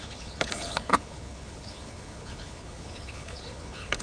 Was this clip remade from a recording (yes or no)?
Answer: yes